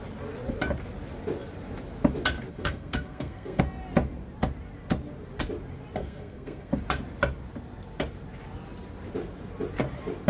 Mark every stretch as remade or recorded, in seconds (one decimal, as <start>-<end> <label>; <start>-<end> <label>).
0.0-2.5 recorded; 2.5-3.6 remade; 3.6-6.0 recorded; 6.0-6.7 remade; 6.7-10.3 recorded